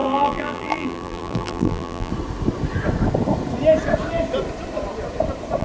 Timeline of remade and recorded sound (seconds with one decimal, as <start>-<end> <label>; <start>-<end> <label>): 0.0-2.1 remade; 2.1-5.6 recorded